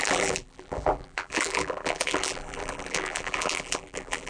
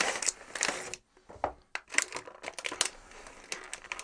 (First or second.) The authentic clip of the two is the second